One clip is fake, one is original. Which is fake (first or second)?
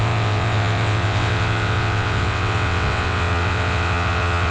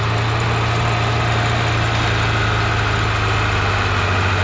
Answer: first